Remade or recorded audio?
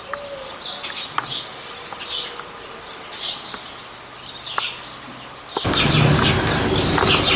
recorded